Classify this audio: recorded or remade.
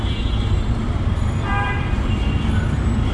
remade